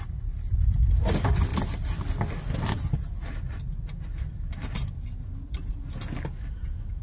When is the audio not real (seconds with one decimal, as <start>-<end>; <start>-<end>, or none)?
none